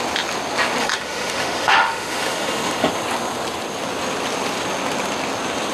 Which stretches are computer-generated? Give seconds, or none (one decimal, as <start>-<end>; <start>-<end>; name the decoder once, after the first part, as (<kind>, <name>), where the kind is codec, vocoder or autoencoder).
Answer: 0.8-2.9 (autoencoder, DAC-VAE)